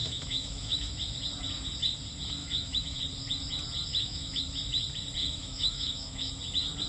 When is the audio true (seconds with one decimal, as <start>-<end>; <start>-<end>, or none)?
0.9-2.4; 3.0-3.9; 4.4-5.2; 6.3-6.9